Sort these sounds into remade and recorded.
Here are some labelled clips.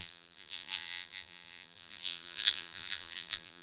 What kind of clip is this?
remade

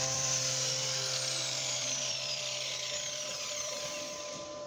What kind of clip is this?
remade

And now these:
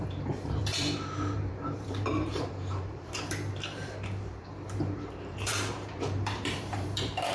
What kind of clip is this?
remade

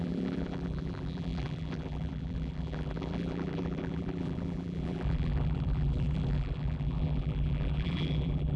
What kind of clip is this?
remade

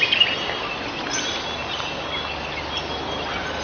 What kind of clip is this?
recorded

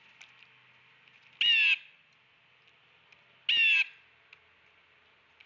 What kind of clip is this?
recorded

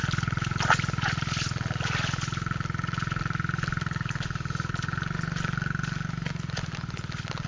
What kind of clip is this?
recorded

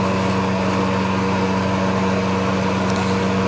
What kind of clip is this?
recorded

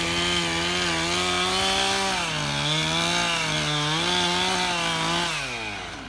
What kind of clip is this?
recorded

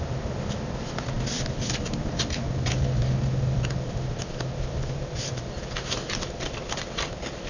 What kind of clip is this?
remade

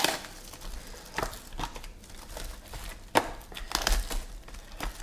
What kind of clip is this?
recorded